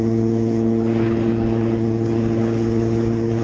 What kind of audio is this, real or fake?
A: fake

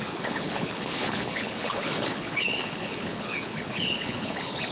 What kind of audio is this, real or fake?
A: fake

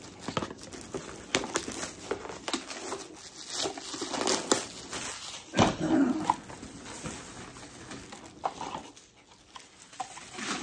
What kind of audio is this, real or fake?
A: real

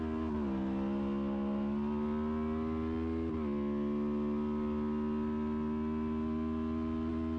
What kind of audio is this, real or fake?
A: real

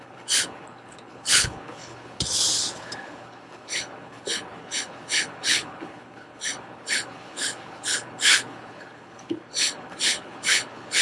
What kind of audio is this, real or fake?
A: fake